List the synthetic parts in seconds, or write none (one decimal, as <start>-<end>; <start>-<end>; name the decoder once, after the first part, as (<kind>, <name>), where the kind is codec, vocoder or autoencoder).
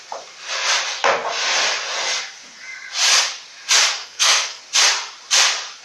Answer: 4.0-4.6 (codec, SNAC)